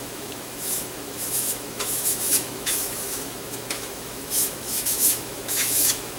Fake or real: fake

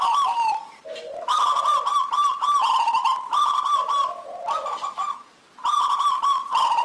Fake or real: fake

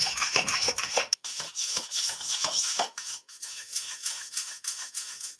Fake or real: fake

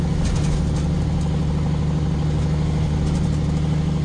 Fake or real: real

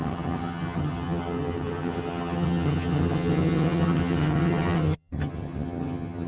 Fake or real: fake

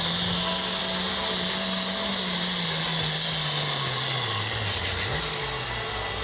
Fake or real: real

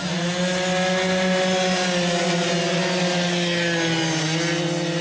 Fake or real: real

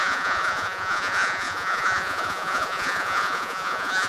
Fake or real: fake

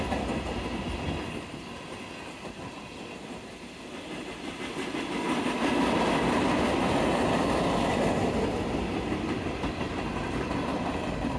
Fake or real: real